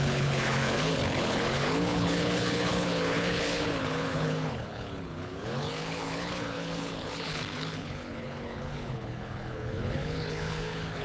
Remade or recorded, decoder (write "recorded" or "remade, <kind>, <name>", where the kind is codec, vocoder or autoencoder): remade, codec, HILCodec